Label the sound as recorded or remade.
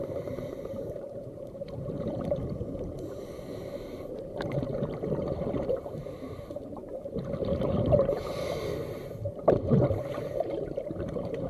remade